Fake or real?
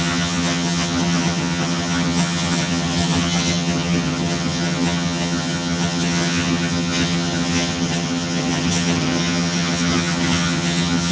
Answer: fake